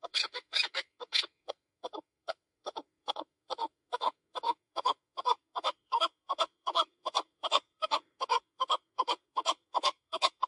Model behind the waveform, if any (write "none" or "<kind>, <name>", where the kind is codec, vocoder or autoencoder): codec, SNAC